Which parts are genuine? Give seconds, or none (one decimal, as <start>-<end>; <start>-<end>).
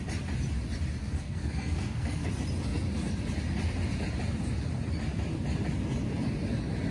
0.0-1.0; 2.3-6.9